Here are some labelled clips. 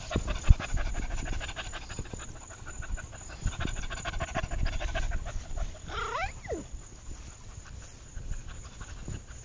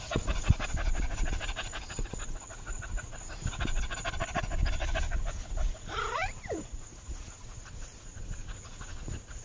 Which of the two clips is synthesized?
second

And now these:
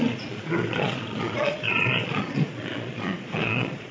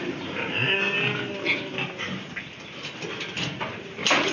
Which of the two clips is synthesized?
first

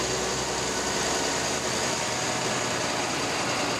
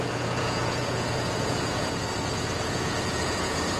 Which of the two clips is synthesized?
second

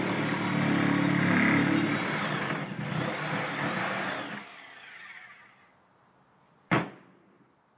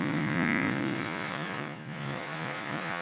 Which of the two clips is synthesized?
second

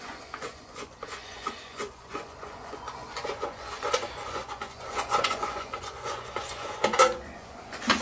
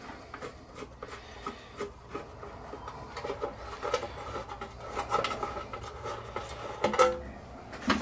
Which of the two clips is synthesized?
first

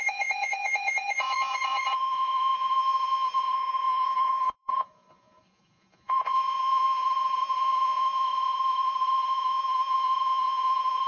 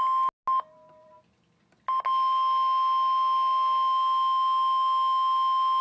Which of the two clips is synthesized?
first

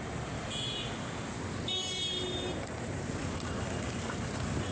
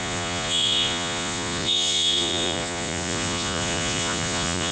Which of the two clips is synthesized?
second